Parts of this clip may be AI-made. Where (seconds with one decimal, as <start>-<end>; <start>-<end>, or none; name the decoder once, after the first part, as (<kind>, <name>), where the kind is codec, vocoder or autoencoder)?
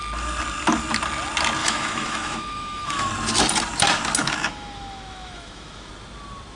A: 1.6-3.1 (autoencoder, DAC-VAE); 4.2-5.9